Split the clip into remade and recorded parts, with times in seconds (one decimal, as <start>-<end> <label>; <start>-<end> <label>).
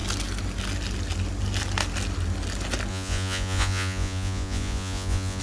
0.0-2.9 recorded; 2.9-5.4 remade